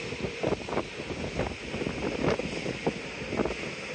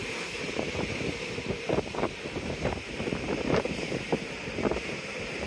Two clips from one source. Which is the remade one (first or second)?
second